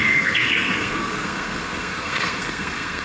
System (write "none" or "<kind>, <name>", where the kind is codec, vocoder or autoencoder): codec, SNAC